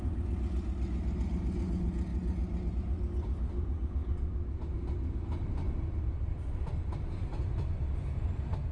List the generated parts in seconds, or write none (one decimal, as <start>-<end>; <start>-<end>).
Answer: none